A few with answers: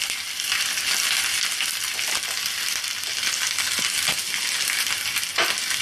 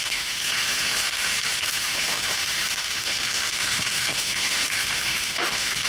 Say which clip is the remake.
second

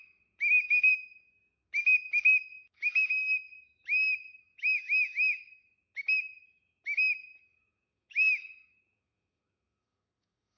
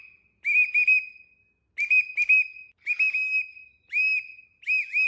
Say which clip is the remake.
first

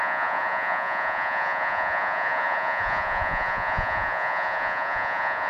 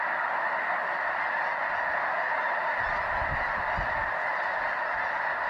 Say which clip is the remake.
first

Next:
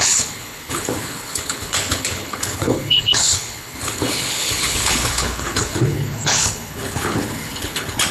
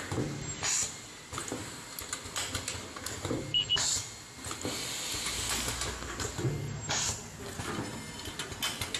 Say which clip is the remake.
first